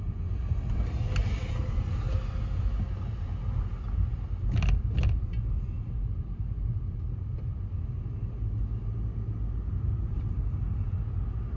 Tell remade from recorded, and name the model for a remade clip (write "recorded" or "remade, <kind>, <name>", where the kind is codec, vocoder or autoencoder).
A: recorded